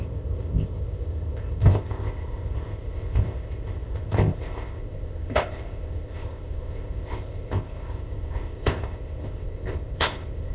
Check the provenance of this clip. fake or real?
fake